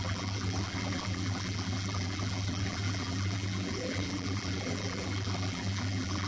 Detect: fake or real fake